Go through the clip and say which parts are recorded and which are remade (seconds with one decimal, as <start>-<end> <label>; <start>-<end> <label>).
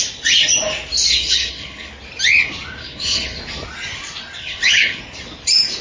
0.0-1.1 recorded; 1.1-1.9 remade; 1.9-2.8 recorded; 2.8-3.4 remade; 3.4-4.4 recorded; 4.4-5.0 remade; 5.0-5.8 recorded